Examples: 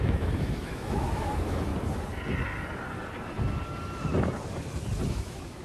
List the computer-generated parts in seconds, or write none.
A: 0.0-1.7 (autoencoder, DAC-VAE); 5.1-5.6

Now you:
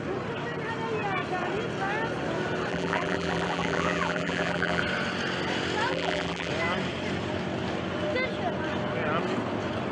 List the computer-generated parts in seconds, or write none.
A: 2.7-4.8 (vocoder, BigVGAN v2); 5.9-6.5

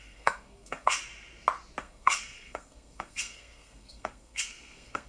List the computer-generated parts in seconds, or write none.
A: 0.0-0.9 (codec, SNAC); 1.8-5.1

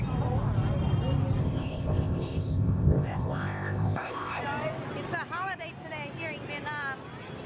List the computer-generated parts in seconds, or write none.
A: 1.4-4.4 (codec, ZipCodec)